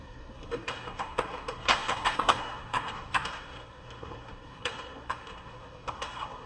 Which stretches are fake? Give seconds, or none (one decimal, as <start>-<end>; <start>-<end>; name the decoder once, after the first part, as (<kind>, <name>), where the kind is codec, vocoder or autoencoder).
0.0-6.5 (codec, SNAC)